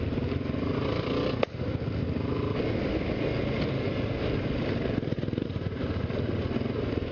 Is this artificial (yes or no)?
no